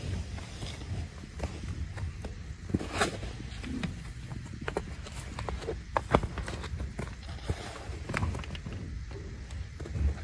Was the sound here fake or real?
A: real